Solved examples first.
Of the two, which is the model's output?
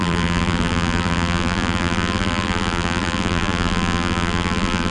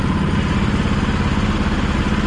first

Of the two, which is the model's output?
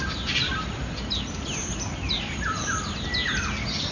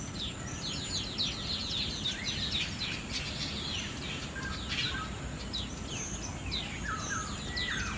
first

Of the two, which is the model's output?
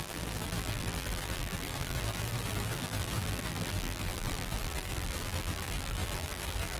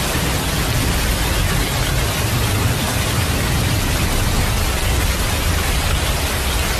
first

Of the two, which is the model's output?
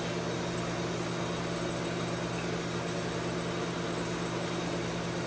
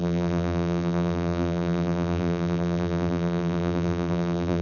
second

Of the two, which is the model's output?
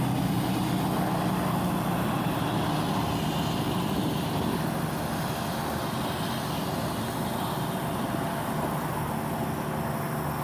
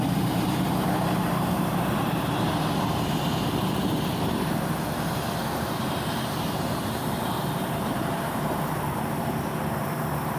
second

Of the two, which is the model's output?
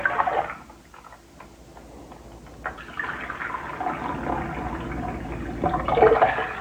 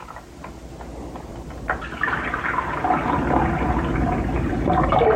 second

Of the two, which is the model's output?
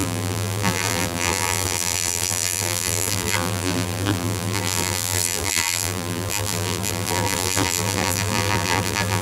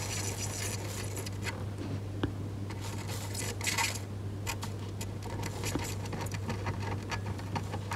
first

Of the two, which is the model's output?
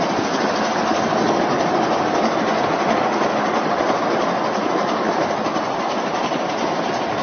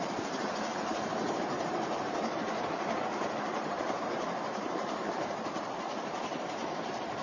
second